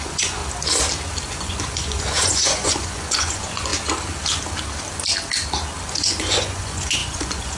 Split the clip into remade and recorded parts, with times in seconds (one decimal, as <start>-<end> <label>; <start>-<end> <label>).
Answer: 0.0-0.4 remade; 0.4-1.3 recorded; 1.3-3.7 remade; 3.7-5.9 recorded; 5.9-7.6 remade